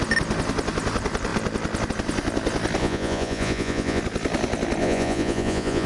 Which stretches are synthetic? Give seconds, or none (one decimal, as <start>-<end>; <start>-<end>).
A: 2.8-4.0; 4.8-5.9